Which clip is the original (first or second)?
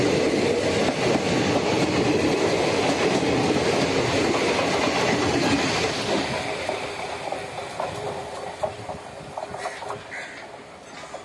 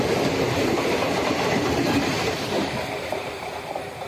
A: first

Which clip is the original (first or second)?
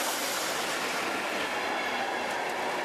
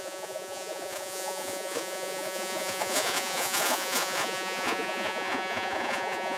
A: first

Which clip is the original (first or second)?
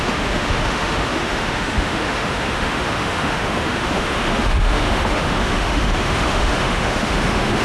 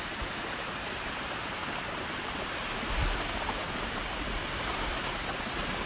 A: second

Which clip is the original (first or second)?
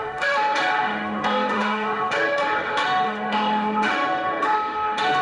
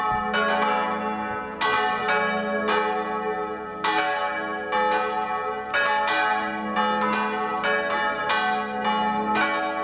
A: second